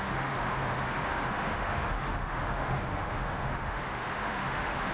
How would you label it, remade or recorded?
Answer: remade